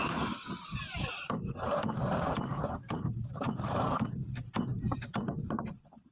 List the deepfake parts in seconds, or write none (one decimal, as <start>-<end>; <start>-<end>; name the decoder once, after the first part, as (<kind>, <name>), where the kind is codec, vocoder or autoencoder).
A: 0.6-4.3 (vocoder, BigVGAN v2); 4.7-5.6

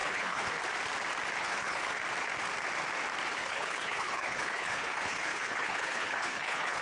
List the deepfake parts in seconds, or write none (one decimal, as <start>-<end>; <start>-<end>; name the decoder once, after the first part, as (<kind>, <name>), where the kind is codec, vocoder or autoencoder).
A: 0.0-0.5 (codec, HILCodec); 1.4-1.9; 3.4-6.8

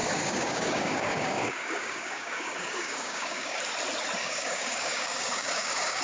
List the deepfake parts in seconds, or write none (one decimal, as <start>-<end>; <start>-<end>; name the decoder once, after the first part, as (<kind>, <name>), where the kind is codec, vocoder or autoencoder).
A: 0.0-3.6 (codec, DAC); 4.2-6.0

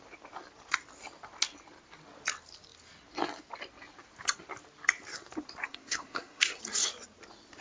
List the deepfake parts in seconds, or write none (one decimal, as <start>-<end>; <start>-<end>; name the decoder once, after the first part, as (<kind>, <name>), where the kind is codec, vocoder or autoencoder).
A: 5.6-6.6 (codec, SNAC)

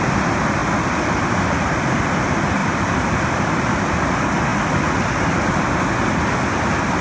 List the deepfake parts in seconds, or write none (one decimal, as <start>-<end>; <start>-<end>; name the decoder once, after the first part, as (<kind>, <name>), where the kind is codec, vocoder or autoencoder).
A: 2.6-4.0 (vocoder, BigVGAN v2)

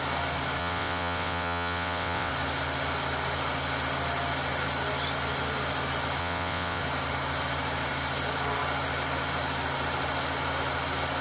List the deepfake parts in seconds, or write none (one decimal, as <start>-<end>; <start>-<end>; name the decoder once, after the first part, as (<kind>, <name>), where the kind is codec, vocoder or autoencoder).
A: 0.6-2.3 (vocoder, WaveNeXt); 6.2-6.8